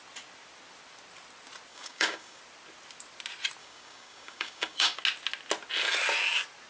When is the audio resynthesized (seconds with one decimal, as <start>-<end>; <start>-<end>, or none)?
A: 1.7-2.4; 3.6-5.0